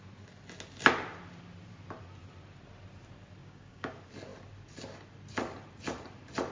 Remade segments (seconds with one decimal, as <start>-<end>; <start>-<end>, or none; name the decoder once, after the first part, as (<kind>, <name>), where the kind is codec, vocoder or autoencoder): 3.4-3.9 (codec, DAC)

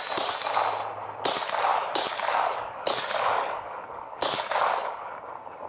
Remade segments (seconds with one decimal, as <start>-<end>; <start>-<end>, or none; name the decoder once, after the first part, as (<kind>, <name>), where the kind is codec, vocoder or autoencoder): 1.7-5.1 (codec, DAC)

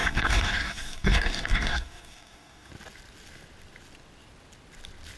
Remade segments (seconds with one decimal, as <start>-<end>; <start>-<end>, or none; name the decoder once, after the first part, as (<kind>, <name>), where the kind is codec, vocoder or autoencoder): 0.0-2.7 (codec, DAC)

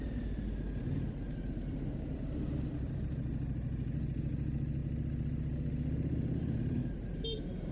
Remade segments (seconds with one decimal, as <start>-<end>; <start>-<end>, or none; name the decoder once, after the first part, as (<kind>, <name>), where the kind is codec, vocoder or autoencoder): none